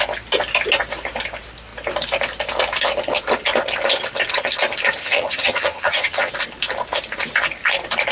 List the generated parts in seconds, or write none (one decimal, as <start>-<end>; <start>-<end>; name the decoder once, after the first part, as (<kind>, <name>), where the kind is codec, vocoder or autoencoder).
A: 5.0-6.3 (vocoder, HiFi-GAN)